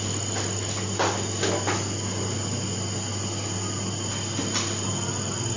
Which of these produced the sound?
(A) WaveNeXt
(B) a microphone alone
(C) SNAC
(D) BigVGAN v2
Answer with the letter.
B